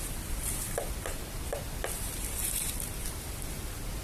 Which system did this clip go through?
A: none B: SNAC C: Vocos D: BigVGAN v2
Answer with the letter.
D